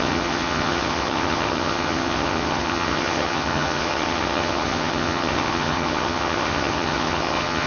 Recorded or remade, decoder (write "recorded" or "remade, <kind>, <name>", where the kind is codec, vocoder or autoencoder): remade, vocoder, HiFi-GAN